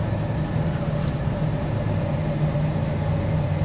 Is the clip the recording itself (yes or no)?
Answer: yes